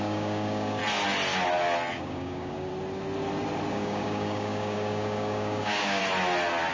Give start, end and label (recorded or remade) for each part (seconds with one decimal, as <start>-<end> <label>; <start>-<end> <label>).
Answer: 0.0-0.8 remade; 0.8-1.9 recorded; 1.9-2.7 remade; 2.7-3.7 recorded; 3.7-6.0 remade; 6.0-6.7 recorded